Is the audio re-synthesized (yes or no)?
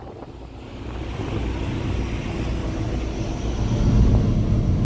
no